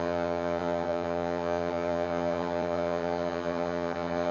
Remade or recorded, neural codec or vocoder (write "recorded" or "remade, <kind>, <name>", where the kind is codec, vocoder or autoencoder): remade, vocoder, HiFi-GAN